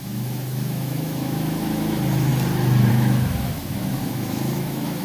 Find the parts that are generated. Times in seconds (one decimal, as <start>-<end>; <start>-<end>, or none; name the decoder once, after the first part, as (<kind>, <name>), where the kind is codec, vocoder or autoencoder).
0.0-2.3 (autoencoder, DAC-VAE); 2.9-5.0